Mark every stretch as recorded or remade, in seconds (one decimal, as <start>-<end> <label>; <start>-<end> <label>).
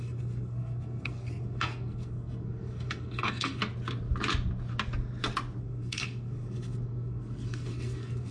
0.0-3.6 remade; 3.6-5.6 recorded; 5.6-8.3 remade